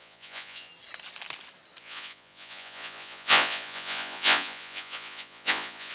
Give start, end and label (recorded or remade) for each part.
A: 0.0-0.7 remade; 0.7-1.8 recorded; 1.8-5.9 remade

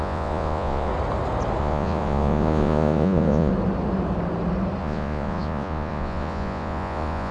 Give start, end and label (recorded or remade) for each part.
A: 0.0-0.9 remade; 0.9-1.6 recorded; 1.6-3.5 remade; 3.5-4.8 recorded; 4.8-7.3 remade

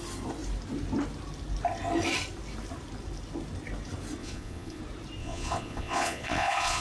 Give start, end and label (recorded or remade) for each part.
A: 0.0-4.2 recorded; 4.2-4.8 remade; 4.8-5.2 recorded; 5.2-6.8 remade

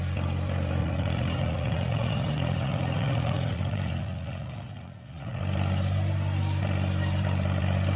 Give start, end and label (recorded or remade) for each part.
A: 0.0-0.8 recorded; 0.8-5.4 remade; 5.4-8.0 recorded

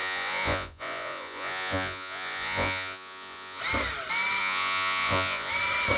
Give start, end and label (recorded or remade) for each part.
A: 0.0-3.6 remade; 3.6-4.4 recorded; 4.4-5.5 remade; 5.5-6.0 recorded

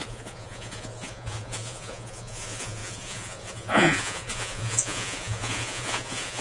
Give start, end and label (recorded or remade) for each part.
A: 0.0-6.4 remade

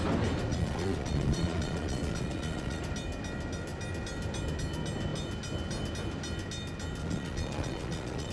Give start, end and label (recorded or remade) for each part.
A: 0.0-0.5 recorded; 0.5-2.8 remade; 2.8-7.0 recorded; 7.0-8.3 remade

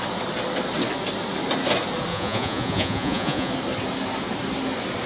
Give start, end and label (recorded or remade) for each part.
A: 0.0-2.1 recorded; 2.1-3.5 remade; 3.5-5.1 recorded